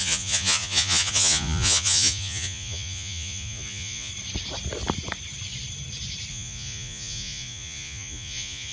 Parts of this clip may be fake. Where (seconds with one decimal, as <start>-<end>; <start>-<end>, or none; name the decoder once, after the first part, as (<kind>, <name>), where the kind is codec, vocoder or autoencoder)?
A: 0.0-4.1 (vocoder, Vocos); 6.3-8.7